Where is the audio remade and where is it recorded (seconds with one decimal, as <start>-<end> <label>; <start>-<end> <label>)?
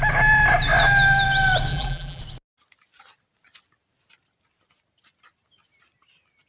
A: 0.0-1.7 recorded; 1.7-2.2 remade; 2.2-6.5 recorded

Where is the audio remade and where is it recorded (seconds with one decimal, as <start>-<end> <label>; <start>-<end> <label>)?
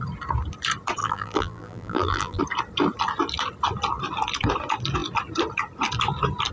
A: 0.0-1.0 recorded; 1.0-2.4 remade; 2.4-6.5 recorded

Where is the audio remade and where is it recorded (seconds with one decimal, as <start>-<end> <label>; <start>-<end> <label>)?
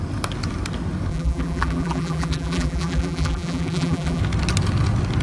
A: 0.0-1.1 recorded; 1.1-4.2 remade; 4.2-5.2 recorded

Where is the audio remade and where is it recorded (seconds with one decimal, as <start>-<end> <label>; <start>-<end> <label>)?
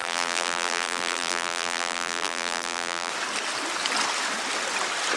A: 0.0-3.1 remade; 3.1-5.2 recorded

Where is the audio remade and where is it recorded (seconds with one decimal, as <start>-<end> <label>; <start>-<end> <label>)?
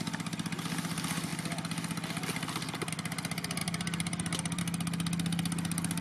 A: 0.0-3.6 recorded; 3.6-4.6 remade; 4.6-6.0 recorded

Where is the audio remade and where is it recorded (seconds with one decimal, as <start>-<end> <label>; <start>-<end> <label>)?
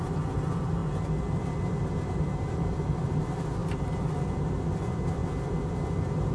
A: 0.0-0.8 remade; 0.8-1.4 recorded; 1.4-3.6 remade; 3.6-4.2 recorded; 4.2-5.2 remade; 5.2-6.3 recorded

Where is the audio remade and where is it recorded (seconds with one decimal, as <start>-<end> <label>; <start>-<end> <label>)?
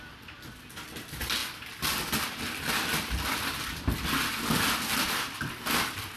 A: 0.0-6.2 recorded